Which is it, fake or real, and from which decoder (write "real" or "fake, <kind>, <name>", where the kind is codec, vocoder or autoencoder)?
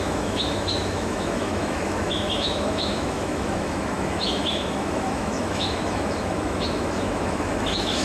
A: fake, autoencoder, DAC-VAE